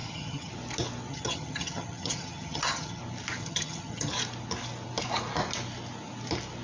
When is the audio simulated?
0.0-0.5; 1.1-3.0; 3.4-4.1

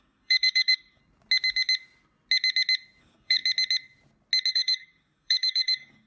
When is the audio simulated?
0.0-1.0; 3.0-3.4; 4.5-6.1

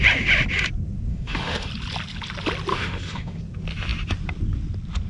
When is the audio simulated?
1.1-1.7; 2.7-3.4

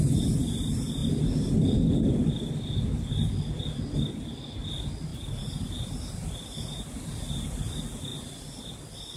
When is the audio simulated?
5.1-6.9

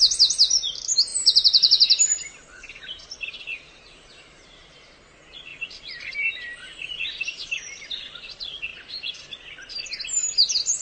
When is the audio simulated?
1.1-4.9